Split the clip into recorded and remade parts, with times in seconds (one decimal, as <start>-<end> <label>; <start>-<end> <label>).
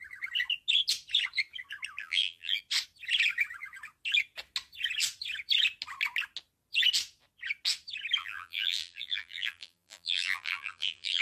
0.0-2.0 recorded; 2.0-2.6 remade; 2.6-8.2 recorded; 8.2-11.2 remade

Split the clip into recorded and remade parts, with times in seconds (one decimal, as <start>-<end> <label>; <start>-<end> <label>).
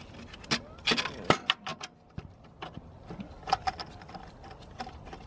0.0-5.3 recorded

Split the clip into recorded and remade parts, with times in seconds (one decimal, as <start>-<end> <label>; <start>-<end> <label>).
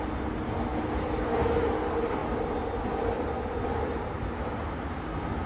0.0-5.5 recorded